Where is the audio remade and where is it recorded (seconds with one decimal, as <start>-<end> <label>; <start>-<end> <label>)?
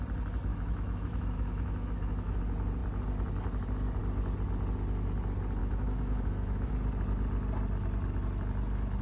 0.0-0.5 recorded; 0.5-2.4 remade; 2.4-5.6 recorded; 5.6-6.7 remade; 6.7-9.0 recorded